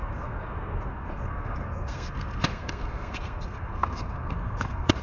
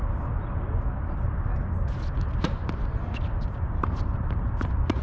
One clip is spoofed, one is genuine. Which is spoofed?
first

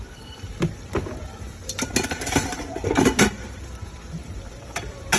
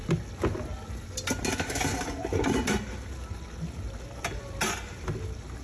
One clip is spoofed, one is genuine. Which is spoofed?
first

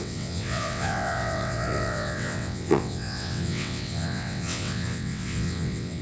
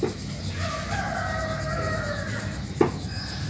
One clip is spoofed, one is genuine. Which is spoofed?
first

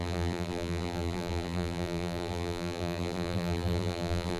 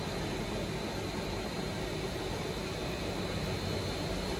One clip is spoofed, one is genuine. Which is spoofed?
first